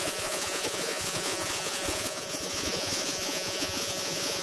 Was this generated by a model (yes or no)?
yes